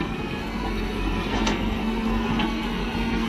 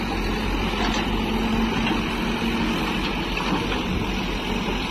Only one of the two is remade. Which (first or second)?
first